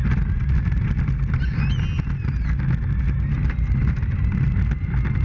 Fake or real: real